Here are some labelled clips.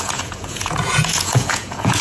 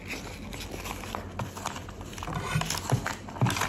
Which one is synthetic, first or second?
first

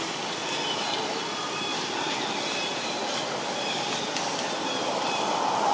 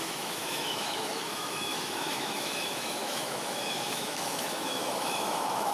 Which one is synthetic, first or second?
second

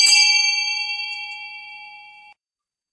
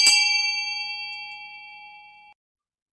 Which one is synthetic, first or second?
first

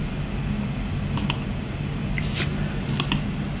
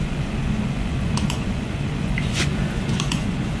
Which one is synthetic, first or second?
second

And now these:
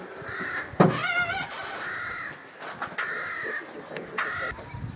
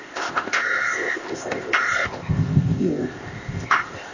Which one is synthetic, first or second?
second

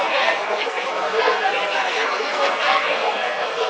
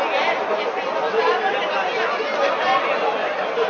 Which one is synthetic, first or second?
first